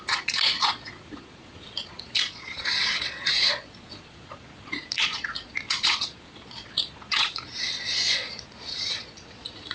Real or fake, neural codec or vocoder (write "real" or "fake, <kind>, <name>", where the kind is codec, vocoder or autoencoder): fake, vocoder, Vocos